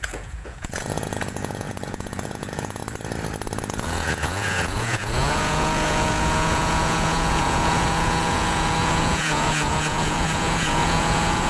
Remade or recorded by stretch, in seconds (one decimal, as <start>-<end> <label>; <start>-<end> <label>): 0.0-2.8 remade; 2.8-3.6 recorded; 3.6-11.5 remade